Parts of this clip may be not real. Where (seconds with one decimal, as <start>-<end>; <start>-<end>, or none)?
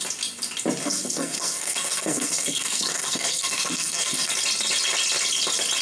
0.8-4.3